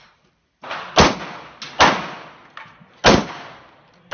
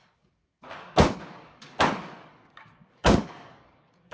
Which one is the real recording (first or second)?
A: first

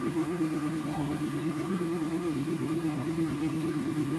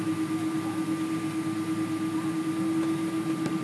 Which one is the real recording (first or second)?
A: second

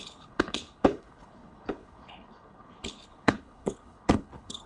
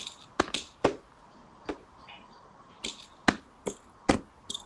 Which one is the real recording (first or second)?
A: second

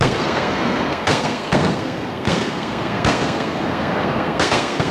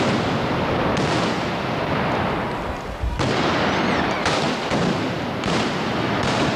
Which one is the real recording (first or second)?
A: second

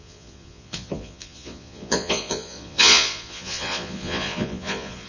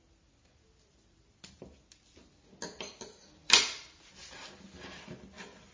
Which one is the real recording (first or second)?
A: second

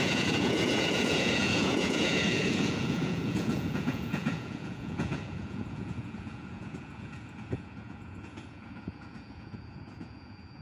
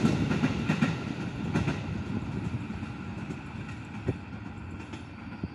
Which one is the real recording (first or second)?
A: second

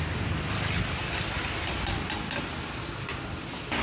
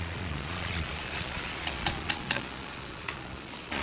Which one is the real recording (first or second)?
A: first